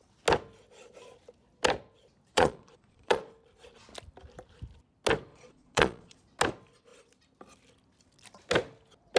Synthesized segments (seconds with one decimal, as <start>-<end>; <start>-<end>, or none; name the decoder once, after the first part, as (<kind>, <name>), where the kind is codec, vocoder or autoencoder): 2.3-3.3 (vocoder, Vocos); 5.3-6.2